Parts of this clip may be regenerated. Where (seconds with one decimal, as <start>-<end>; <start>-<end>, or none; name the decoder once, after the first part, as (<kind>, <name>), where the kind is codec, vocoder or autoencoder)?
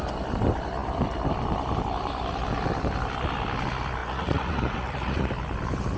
4.0-5.3 (vocoder, Vocos)